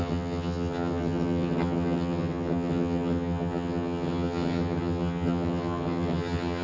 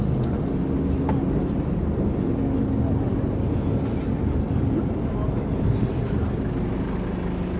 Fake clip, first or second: first